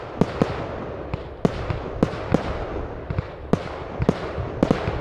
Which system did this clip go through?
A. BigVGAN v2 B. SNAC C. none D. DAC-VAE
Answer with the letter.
C